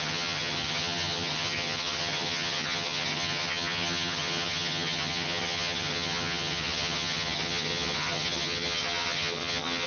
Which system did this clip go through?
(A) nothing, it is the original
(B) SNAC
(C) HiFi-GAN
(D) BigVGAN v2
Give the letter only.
C